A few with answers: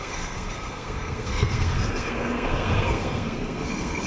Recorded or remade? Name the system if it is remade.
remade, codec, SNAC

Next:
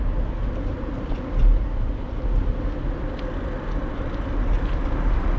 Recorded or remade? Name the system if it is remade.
remade, vocoder, BigVGAN v2